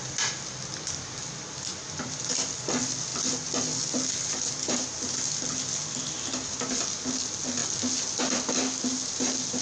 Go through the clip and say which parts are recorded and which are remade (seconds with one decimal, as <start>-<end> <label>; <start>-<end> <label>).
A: 0.0-9.6 recorded